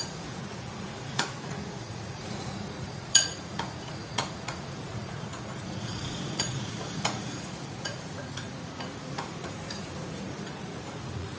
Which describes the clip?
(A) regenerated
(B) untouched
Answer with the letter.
A